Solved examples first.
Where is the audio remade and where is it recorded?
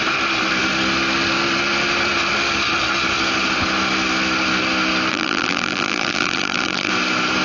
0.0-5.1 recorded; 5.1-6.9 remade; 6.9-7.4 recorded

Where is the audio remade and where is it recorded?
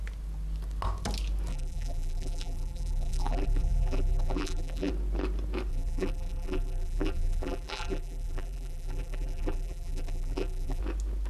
0.0-1.5 recorded; 1.5-4.9 remade; 4.9-5.7 recorded; 5.7-10.8 remade; 10.8-11.3 recorded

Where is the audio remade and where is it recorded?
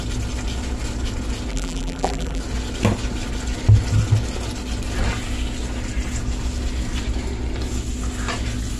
0.0-1.5 recorded; 1.5-2.4 remade; 2.4-8.8 recorded